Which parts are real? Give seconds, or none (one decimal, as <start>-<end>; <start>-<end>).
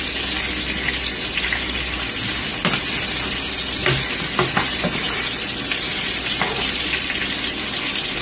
0.0-8.2